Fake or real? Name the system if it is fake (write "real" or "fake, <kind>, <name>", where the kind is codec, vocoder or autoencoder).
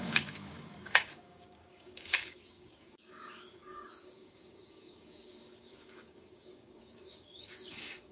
fake, codec, DAC